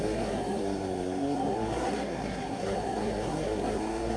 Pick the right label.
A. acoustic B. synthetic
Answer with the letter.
B